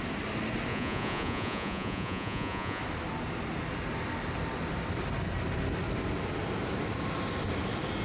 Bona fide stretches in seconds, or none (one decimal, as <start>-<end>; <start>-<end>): 0.0-0.7; 2.8-8.0